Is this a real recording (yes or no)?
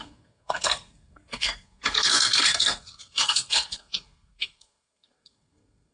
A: no